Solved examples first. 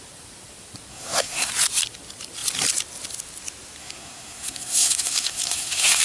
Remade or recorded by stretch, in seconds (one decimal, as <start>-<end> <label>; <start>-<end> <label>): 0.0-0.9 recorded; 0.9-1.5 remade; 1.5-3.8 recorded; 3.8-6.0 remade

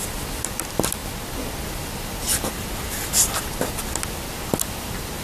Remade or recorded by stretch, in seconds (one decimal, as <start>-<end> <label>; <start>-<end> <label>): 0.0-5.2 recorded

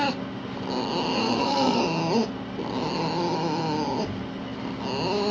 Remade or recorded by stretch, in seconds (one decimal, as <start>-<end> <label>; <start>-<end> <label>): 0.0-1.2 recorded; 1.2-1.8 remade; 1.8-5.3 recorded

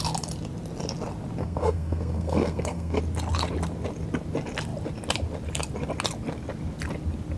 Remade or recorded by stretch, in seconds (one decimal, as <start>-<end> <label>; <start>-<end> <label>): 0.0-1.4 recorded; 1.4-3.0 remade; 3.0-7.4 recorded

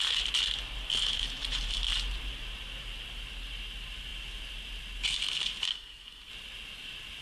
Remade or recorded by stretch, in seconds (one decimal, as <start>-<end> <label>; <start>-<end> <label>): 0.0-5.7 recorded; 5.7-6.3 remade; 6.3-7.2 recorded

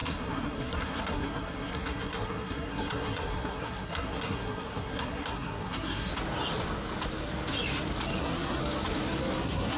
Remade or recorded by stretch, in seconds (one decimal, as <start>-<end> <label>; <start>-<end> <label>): 0.0-6.1 remade; 6.1-8.2 recorded; 8.2-8.6 remade; 8.6-9.4 recorded; 9.4-9.8 remade

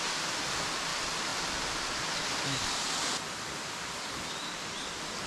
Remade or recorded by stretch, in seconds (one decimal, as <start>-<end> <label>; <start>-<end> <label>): 0.0-5.3 recorded

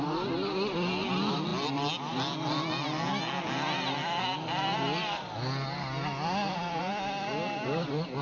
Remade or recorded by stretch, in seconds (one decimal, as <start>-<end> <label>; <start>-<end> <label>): 0.0-8.2 recorded